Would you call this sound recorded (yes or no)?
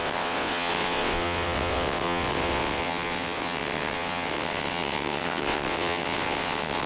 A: no